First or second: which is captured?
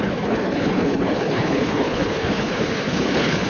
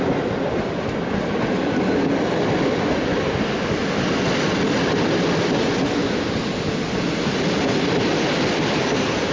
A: second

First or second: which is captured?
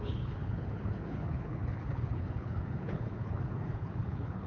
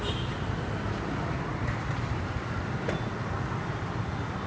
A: second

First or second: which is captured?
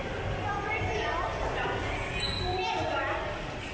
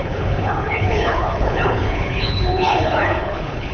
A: first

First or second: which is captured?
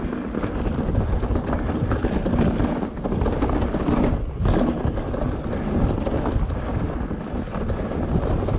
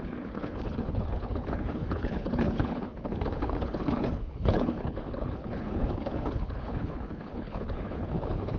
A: first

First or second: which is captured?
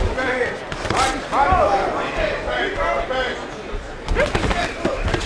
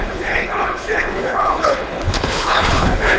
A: first